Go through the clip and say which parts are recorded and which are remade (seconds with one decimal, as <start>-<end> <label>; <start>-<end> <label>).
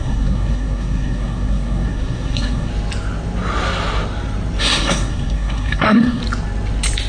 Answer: 0.0-2.7 remade; 2.7-4.6 recorded; 4.6-6.2 remade; 6.2-7.1 recorded